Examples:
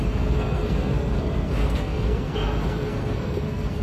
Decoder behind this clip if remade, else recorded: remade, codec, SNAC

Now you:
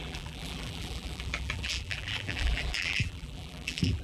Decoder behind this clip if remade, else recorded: remade, vocoder, BigVGAN v2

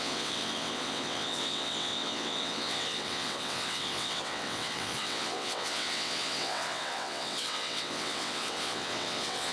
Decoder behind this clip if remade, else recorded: remade, vocoder, WaveNeXt